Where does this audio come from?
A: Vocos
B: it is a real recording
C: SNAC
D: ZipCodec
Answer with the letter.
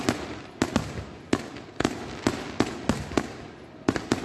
B